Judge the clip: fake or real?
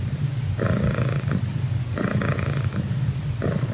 real